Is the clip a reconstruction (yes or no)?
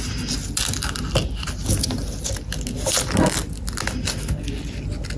no